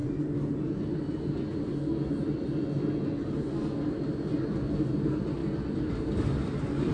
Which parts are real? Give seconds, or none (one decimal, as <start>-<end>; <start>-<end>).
0.0-3.9; 5.4-5.9